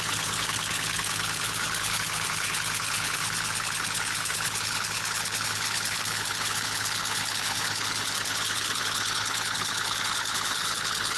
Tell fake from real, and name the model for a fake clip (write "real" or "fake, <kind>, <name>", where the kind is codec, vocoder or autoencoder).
fake, codec, HILCodec